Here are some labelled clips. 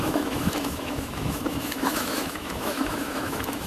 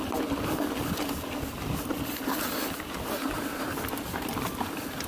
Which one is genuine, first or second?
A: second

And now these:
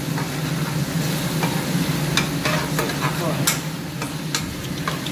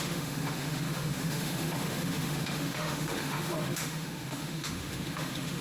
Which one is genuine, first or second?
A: first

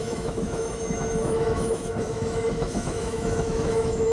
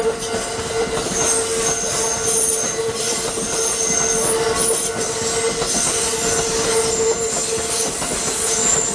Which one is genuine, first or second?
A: second